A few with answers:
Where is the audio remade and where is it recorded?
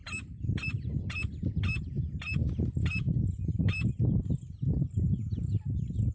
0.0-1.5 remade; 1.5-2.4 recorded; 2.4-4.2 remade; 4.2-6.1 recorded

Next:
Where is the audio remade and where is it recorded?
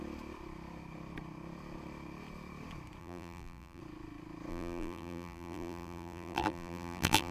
0.0-3.0 recorded; 3.0-3.8 remade; 3.8-4.5 recorded; 4.5-7.3 remade